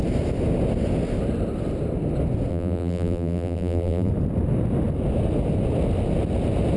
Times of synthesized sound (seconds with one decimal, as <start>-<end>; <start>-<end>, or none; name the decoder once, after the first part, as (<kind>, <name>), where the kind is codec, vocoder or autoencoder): 2.5-4.1 (vocoder, BigVGAN v2)